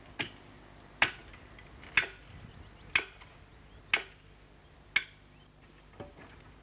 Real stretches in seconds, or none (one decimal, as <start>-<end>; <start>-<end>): 0.0-6.6